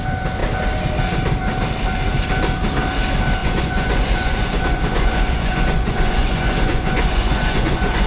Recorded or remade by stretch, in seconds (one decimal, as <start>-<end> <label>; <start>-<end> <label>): 0.0-3.4 recorded; 3.4-8.1 remade